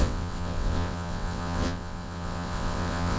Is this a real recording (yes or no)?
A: no